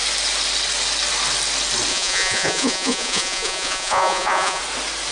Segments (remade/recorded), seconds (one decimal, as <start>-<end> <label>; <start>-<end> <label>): 0.0-1.9 recorded; 1.9-4.6 remade; 4.6-5.1 recorded